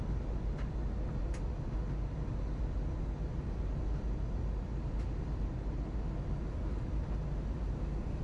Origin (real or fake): real